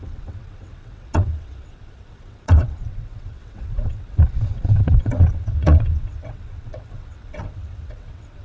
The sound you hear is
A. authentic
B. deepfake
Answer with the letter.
B